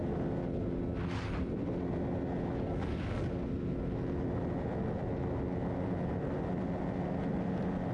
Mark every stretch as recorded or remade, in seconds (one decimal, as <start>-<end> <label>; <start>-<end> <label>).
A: 0.0-7.9 recorded